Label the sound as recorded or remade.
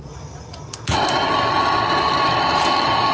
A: recorded